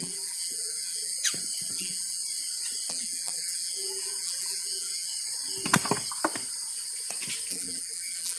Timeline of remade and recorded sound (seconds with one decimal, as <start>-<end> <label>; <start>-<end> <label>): 0.0-1.1 remade; 1.1-1.7 recorded; 1.7-2.2 remade; 2.2-2.9 recorded; 2.9-5.1 remade; 5.1-7.5 recorded; 7.5-8.4 remade